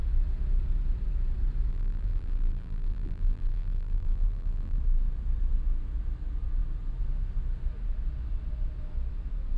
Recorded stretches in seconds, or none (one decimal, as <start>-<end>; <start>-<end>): 0.0-1.7; 4.8-9.6